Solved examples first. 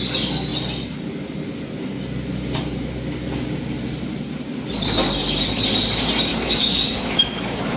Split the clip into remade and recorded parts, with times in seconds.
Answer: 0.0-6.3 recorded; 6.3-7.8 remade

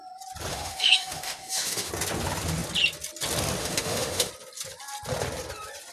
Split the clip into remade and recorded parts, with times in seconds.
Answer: 0.0-0.5 recorded; 0.5-1.9 remade; 1.9-3.6 recorded; 3.6-4.3 remade; 4.3-5.9 recorded

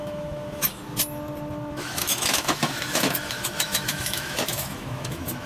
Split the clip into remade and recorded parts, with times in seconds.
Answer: 0.0-0.8 remade; 0.8-1.7 recorded; 1.7-5.5 remade

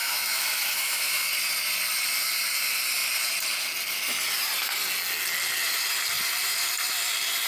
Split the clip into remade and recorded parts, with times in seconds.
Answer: 0.0-1.3 remade; 1.3-7.5 recorded